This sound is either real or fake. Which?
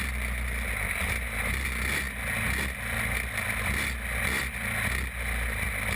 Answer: real